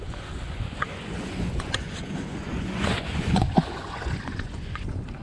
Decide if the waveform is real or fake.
fake